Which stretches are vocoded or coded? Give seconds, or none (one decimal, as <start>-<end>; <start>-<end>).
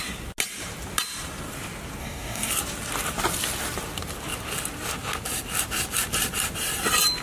2.0-2.5